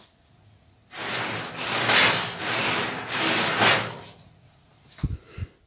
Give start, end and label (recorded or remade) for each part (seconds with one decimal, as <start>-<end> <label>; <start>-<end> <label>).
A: 0.0-0.8 remade; 0.8-4.2 recorded; 4.2-4.7 remade; 4.7-5.7 recorded